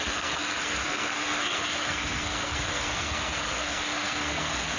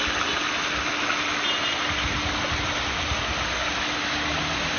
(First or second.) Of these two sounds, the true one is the second